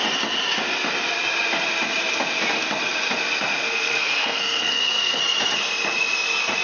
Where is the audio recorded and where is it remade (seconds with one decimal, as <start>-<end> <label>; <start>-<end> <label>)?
0.0-3.6 recorded; 3.6-5.2 remade; 5.2-6.6 recorded